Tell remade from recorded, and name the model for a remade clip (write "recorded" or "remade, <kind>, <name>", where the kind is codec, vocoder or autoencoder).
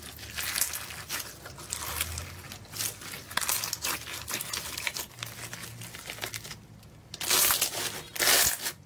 recorded